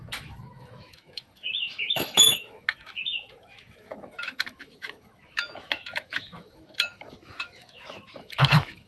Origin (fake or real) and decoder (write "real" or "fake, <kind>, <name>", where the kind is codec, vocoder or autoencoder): fake, autoencoder, DAC-VAE